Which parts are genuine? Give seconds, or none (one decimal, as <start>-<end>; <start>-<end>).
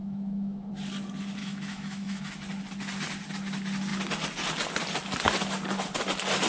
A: 0.7-1.4; 2.2-6.5